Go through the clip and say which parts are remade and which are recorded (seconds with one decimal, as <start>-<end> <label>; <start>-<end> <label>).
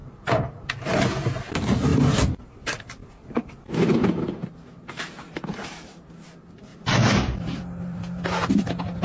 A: 0.0-0.7 remade; 0.7-1.9 recorded; 1.9-3.4 remade; 3.4-6.7 recorded; 6.7-8.0 remade; 8.0-9.0 recorded